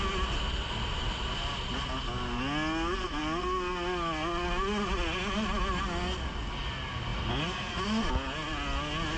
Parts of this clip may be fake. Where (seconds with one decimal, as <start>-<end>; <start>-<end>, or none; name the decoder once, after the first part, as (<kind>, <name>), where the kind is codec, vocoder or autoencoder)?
none